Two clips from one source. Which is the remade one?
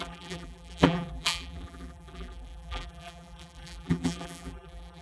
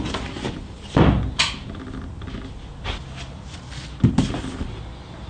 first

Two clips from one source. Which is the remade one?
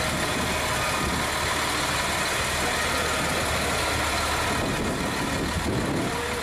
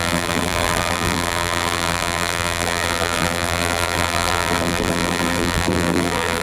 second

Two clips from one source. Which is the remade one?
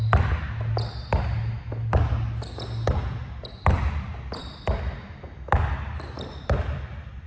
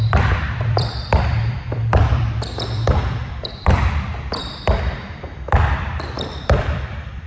second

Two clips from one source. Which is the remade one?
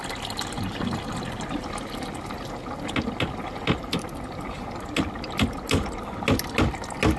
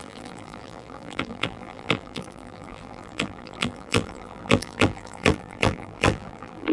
second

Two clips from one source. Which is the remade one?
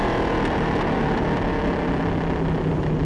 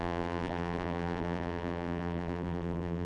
second